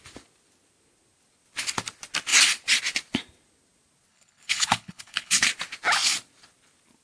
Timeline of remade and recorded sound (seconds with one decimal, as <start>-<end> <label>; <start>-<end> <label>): 0.0-4.1 recorded; 4.1-5.5 remade; 5.5-7.0 recorded